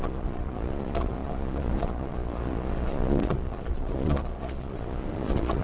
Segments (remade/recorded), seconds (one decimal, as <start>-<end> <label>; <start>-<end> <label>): 0.0-5.6 remade